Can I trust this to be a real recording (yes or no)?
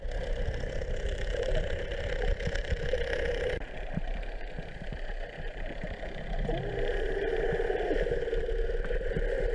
no